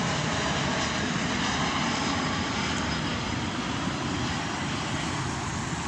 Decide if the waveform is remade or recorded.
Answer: recorded